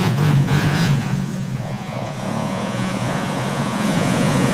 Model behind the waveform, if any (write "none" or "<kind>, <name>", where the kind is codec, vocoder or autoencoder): vocoder, Vocos